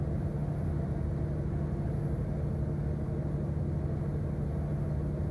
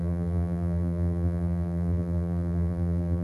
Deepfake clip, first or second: second